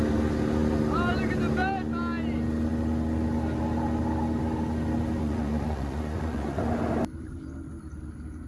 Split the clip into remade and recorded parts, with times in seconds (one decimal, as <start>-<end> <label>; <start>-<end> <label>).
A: 0.0-5.2 recorded; 5.2-6.6 remade; 6.6-8.5 recorded

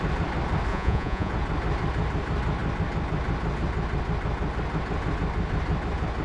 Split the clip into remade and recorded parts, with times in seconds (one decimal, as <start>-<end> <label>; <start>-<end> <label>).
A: 0.0-0.7 recorded; 0.7-1.3 remade; 1.3-6.2 recorded

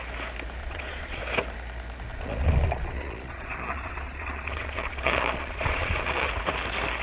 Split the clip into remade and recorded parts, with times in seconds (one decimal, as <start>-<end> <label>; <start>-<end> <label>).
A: 0.0-0.6 recorded; 0.6-1.2 remade; 1.2-2.1 recorded; 2.1-6.3 remade; 6.3-7.0 recorded